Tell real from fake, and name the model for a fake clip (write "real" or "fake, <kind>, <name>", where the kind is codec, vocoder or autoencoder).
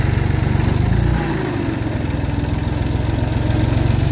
real